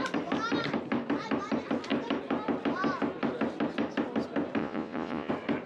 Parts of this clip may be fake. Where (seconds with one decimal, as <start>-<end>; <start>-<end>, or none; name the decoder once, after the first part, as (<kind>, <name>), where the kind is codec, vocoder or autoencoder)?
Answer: 4.6-5.3 (vocoder, Vocos)